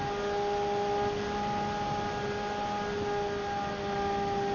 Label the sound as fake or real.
real